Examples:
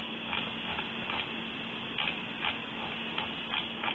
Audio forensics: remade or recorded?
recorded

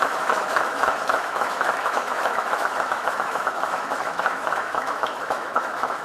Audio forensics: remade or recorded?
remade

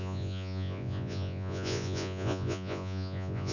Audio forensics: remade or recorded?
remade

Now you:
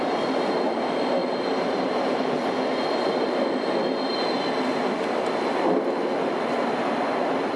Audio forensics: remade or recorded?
recorded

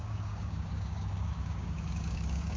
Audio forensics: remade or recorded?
remade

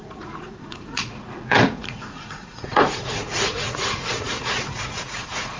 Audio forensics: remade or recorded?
remade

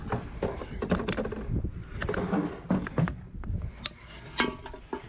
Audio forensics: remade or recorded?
recorded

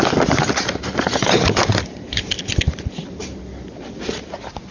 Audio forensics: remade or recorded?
remade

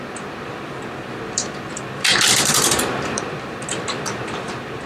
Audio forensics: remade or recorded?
remade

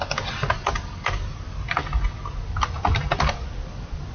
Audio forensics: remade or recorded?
recorded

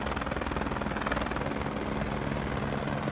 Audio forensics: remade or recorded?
recorded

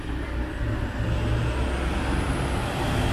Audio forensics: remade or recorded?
recorded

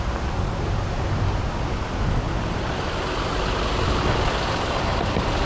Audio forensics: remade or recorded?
recorded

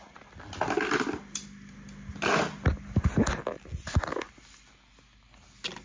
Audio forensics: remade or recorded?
recorded